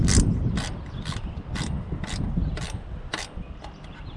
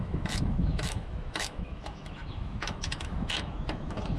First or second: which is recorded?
first